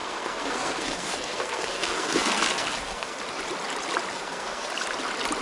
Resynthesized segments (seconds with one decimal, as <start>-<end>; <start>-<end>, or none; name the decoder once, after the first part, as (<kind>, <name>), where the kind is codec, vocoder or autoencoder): 0.0-3.2 (codec, SNAC); 4.1-4.7